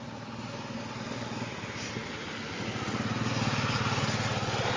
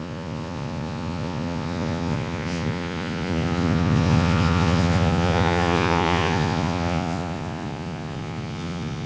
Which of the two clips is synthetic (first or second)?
second